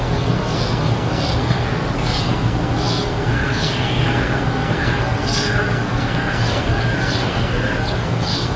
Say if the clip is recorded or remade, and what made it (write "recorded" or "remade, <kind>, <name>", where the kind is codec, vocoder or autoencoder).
remade, codec, SNAC